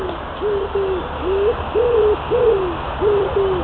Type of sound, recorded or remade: recorded